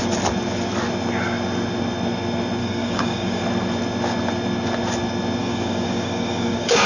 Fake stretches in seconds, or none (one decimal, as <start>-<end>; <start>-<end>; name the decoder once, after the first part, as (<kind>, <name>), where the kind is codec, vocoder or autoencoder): 2.6-3.4 (codec, DAC); 5.4-6.9